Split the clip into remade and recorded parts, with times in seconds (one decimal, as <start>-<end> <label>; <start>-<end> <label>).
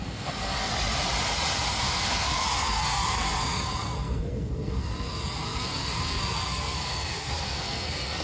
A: 0.0-0.7 remade; 0.7-1.8 recorded; 1.8-8.2 remade